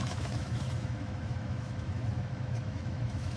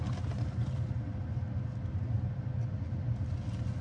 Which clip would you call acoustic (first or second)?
second